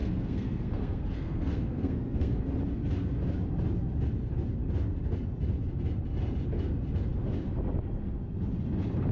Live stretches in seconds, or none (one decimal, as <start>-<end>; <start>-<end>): 2.4-9.1